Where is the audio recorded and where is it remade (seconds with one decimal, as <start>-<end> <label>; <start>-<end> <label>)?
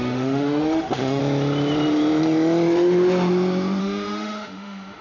0.0-1.2 remade; 1.2-3.8 recorded; 3.8-5.0 remade